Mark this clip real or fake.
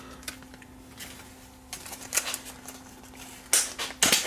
real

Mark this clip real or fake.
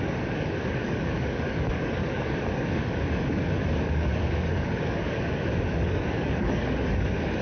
fake